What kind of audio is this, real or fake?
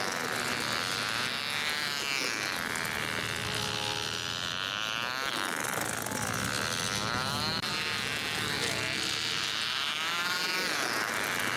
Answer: real